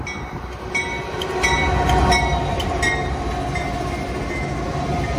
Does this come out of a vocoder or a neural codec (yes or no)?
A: no